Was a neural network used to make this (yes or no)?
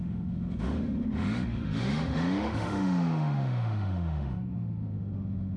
yes